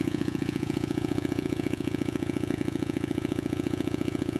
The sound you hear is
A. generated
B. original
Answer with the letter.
A